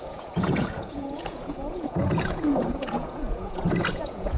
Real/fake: fake